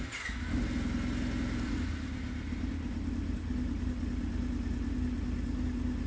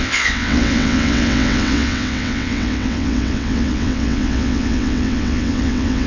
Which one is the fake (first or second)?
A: second